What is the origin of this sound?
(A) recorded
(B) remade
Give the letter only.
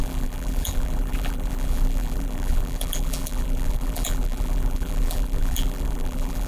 B